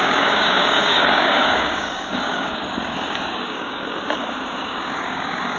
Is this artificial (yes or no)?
yes